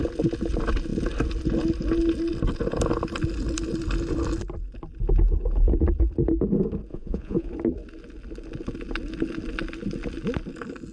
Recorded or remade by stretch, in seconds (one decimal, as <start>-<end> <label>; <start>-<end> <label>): 0.0-6.9 recorded; 6.9-7.5 remade; 7.5-10.9 recorded